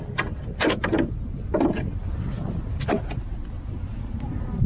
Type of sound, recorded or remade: recorded